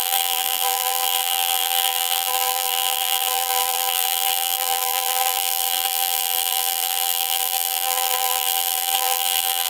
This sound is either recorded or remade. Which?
remade